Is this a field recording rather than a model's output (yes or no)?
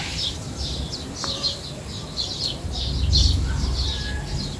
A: yes